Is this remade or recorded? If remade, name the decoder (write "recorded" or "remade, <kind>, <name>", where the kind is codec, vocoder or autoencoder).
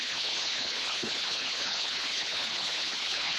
remade, codec, HILCodec